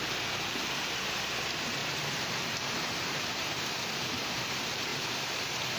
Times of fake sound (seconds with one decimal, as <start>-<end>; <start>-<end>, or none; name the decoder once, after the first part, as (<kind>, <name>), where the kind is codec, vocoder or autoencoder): 1.8-3.7 (vocoder, BigVGAN v2)